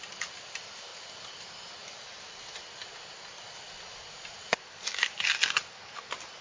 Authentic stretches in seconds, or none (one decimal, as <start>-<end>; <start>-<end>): 0.0-6.4